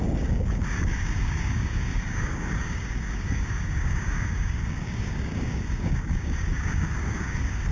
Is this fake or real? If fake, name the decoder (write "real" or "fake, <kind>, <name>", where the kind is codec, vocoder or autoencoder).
fake, codec, DAC